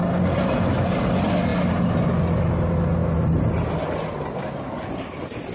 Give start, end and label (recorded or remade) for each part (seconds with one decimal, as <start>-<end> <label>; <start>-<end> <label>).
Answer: 0.0-5.5 recorded